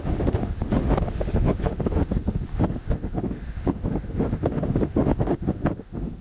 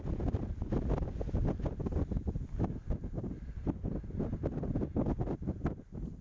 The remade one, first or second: first